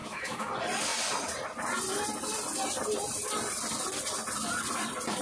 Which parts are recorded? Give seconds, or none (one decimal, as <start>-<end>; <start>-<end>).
0.5-5.2